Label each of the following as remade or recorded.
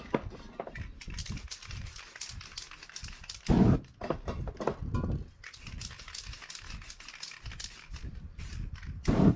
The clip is recorded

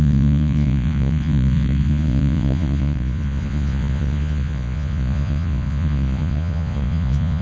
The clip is remade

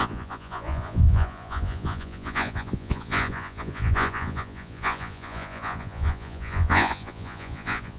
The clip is remade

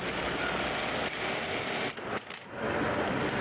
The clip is recorded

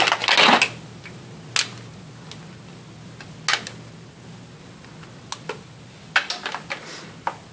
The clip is recorded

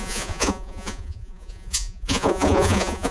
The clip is remade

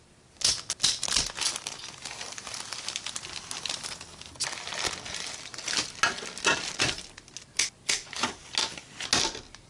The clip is recorded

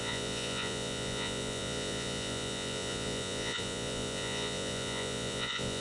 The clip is remade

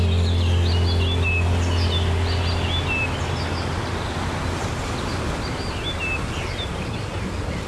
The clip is recorded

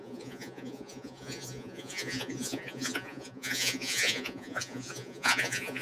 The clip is remade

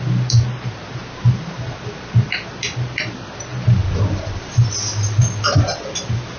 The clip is recorded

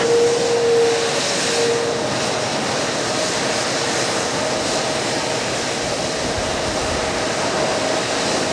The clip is recorded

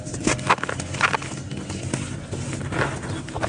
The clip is recorded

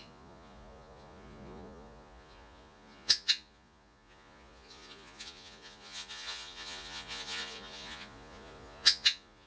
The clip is remade